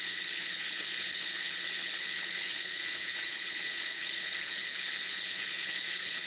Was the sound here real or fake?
fake